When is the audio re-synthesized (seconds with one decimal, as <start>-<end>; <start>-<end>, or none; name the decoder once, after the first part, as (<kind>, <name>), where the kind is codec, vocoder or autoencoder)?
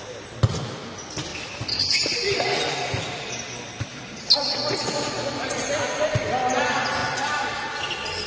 1.3-3.0 (vocoder, BigVGAN v2); 3.9-5.5